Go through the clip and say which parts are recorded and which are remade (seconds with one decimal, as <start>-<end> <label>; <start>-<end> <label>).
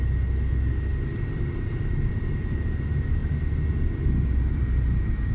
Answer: 0.0-1.1 recorded; 1.1-2.1 remade; 2.1-3.2 recorded; 3.2-5.3 remade